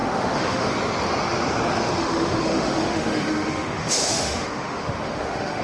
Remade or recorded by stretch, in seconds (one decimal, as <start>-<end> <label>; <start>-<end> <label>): 0.0-0.7 remade; 0.7-2.0 recorded; 2.0-5.6 remade